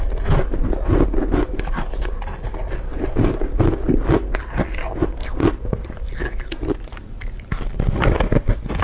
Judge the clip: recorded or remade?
recorded